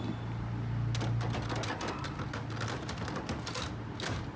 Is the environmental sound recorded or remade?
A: recorded